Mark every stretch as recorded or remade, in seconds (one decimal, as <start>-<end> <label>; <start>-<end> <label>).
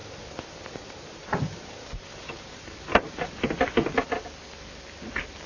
0.0-3.3 remade; 3.3-5.5 recorded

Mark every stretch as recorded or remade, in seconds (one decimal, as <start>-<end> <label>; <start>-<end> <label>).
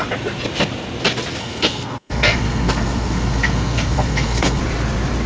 0.0-1.4 recorded; 1.4-4.6 remade; 4.6-5.3 recorded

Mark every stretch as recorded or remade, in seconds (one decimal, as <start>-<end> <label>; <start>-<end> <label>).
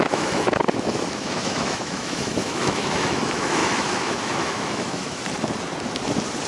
0.0-5.2 remade; 5.2-6.5 recorded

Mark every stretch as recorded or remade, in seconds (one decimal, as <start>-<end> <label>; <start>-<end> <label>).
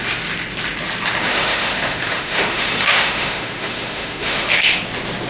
0.0-1.3 recorded; 1.3-4.5 remade; 4.5-5.3 recorded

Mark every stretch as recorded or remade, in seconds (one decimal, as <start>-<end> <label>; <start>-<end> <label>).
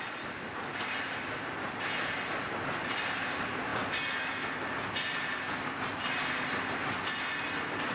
0.0-7.9 recorded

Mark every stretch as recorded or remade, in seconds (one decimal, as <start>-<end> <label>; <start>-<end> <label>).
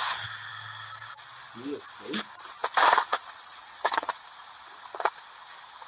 0.0-3.1 recorded; 3.1-5.1 remade; 5.1-5.9 recorded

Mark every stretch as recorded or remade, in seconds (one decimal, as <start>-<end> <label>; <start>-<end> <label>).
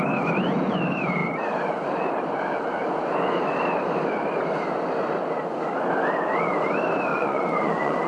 0.0-7.1 recorded; 7.1-8.1 remade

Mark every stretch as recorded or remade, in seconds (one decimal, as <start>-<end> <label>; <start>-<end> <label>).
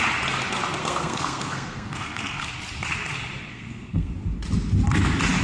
0.0-0.8 recorded; 0.8-2.5 remade; 2.5-3.5 recorded; 3.5-4.1 remade; 4.1-5.4 recorded